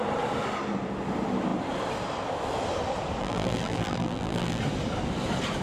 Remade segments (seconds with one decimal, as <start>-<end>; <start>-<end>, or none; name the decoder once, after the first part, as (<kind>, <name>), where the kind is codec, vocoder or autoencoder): 3.2-4.6 (vocoder, BigVGAN v2)